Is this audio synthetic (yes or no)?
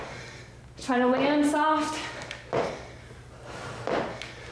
no